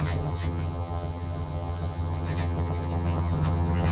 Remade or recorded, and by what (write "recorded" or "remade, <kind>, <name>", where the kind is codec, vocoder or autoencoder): remade, vocoder, HiFi-GAN